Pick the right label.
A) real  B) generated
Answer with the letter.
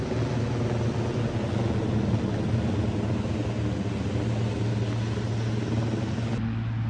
A